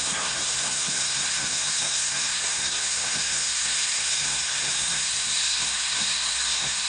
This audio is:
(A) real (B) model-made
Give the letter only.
B